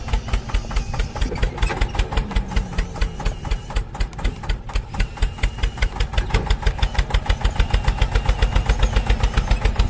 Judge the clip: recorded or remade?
recorded